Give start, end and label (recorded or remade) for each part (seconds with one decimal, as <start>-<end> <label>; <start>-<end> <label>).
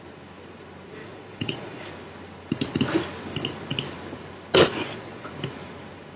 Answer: 0.0-1.0 recorded; 1.0-1.9 remade; 1.9-4.8 recorded; 4.8-5.3 remade; 5.3-6.2 recorded